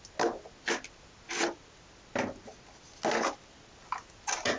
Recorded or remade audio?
recorded